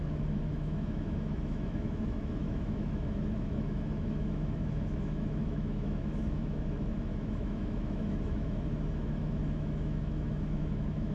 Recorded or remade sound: remade